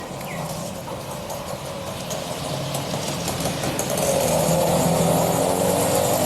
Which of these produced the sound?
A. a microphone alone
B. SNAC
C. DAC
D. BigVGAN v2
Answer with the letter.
A